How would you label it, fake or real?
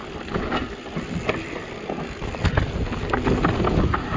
real